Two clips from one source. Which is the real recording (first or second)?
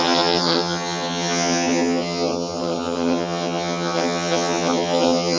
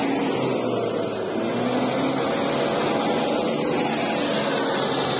second